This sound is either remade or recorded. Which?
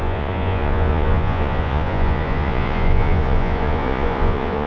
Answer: remade